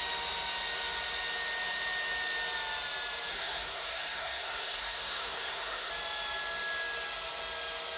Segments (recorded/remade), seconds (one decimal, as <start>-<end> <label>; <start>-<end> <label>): 0.0-3.3 recorded; 3.3-5.9 remade; 5.9-8.0 recorded

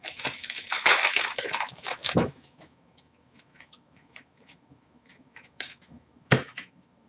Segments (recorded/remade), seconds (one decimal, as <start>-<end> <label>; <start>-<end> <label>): 0.0-7.1 remade

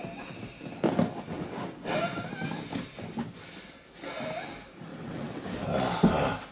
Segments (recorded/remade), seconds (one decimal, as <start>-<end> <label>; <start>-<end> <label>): 0.0-4.9 recorded; 4.9-5.4 remade; 5.4-6.5 recorded

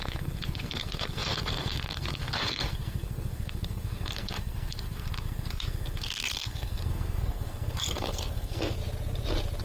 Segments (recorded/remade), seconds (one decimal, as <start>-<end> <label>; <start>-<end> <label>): 0.0-8.8 remade; 8.8-9.6 recorded

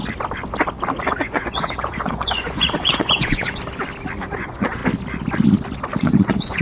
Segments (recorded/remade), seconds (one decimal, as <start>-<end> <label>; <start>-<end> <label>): 0.0-1.0 recorded; 1.0-3.6 remade; 3.6-4.2 recorded; 4.2-4.8 remade; 4.8-6.0 recorded; 6.0-6.6 remade

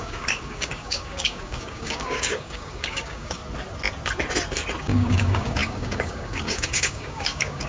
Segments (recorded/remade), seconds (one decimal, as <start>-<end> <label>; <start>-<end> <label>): 0.0-3.4 remade; 3.4-4.8 recorded; 4.8-7.7 remade